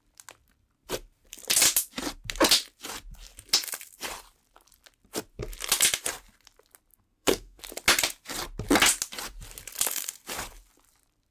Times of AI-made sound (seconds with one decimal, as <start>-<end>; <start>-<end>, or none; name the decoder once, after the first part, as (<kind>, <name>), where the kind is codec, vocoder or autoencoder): 6.9-7.6 (codec, SNAC)